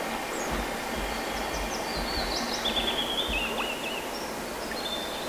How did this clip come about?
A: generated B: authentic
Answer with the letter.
B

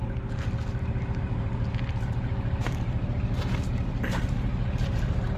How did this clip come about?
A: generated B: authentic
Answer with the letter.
B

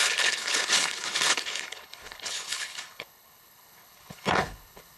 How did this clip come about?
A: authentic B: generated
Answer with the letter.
B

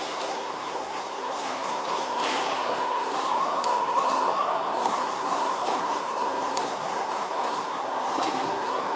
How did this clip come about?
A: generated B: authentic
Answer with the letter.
A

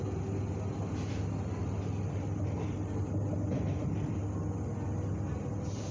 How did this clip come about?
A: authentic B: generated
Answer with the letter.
A